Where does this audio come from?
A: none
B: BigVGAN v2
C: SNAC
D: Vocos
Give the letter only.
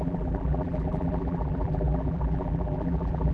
B